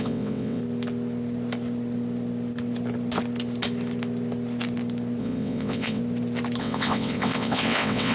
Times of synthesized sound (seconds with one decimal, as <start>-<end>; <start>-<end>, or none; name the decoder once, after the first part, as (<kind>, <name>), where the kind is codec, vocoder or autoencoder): 0.0-0.6 (vocoder, WaveNeXt); 5.2-6.0; 6.6-8.1